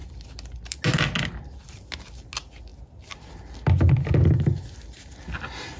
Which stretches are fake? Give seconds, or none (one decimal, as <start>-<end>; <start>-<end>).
none